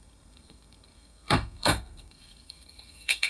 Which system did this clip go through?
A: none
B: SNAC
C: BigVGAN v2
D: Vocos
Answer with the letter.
B